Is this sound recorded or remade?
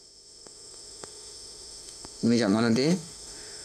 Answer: remade